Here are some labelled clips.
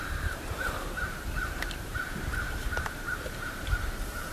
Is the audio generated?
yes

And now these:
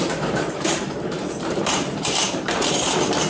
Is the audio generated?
yes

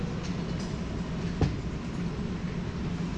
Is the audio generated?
no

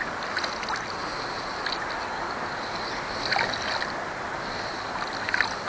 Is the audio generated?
no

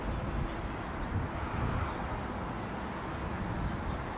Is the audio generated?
no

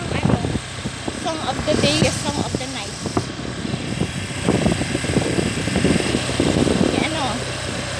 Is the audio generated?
no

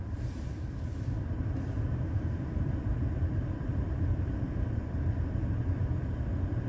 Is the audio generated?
yes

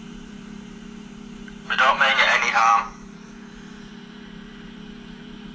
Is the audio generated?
yes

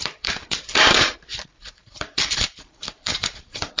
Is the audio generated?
yes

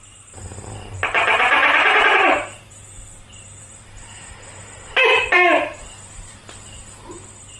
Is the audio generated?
yes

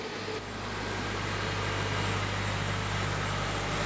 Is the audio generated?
no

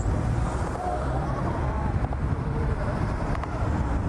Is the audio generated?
yes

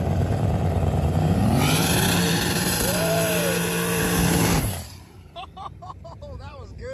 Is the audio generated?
yes